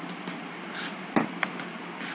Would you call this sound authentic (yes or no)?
yes